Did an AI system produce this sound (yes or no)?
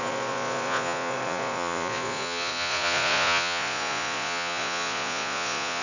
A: yes